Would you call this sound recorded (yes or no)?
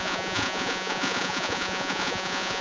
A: no